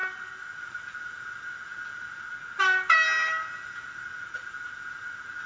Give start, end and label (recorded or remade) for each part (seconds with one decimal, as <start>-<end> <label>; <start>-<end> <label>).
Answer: 0.0-5.5 recorded